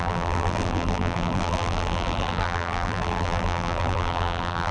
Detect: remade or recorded remade